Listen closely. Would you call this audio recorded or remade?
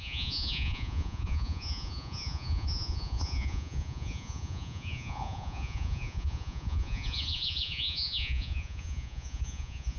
remade